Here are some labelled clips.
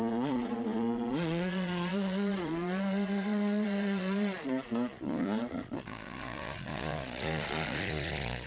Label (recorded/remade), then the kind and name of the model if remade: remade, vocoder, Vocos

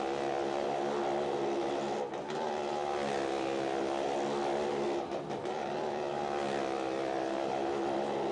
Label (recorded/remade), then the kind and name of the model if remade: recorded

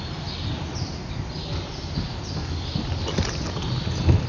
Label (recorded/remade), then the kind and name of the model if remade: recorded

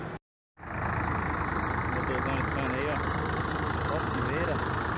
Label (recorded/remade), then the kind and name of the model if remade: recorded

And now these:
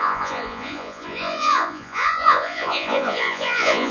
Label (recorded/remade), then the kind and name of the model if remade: remade, vocoder, Vocos